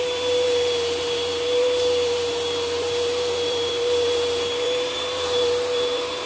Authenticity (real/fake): fake